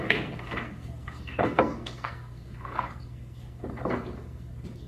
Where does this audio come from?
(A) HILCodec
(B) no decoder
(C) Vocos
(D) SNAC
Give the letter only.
D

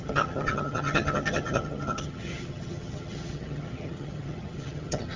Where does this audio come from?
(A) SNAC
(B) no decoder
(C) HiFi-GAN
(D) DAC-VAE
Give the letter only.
C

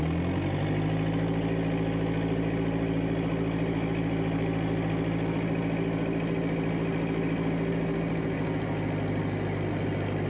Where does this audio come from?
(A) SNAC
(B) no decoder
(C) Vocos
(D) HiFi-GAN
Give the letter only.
B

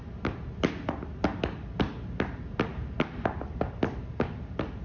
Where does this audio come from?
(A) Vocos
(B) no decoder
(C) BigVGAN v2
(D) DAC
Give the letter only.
B